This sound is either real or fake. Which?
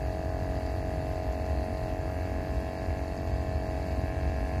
real